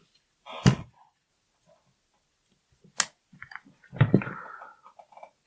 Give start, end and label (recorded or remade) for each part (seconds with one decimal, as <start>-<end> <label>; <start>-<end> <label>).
0.0-0.7 recorded; 0.7-1.3 remade; 1.3-5.5 recorded